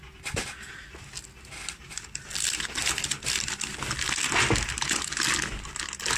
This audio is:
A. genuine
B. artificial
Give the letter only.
A